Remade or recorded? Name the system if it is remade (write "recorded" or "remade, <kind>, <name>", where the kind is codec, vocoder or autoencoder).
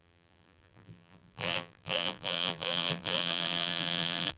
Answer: remade, vocoder, BigVGAN v2